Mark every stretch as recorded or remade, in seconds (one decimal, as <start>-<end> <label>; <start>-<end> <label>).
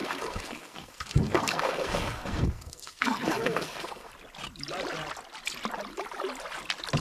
0.0-4.1 remade; 4.1-7.0 recorded